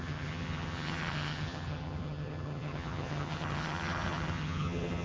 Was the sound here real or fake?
fake